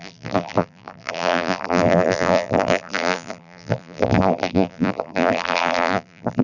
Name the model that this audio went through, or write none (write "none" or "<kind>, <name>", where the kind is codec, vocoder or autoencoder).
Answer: vocoder, BigVGAN v2